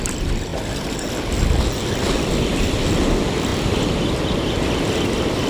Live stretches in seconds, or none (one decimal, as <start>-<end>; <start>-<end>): 0.0-5.5